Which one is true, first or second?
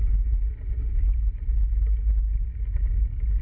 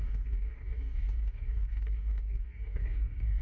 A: first